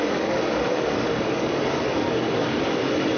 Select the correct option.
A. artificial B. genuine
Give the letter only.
A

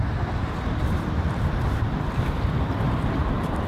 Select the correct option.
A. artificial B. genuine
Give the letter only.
B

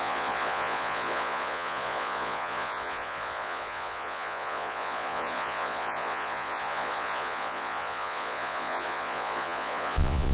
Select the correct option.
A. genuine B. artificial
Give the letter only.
B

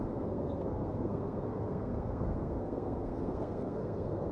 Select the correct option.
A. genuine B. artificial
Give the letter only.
B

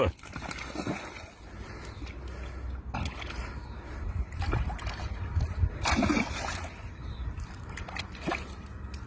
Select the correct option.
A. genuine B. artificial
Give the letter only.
A